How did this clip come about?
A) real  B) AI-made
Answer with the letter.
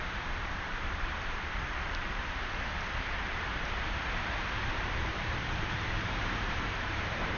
B